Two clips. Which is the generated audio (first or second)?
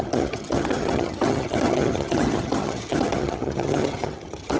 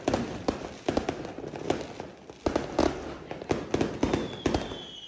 first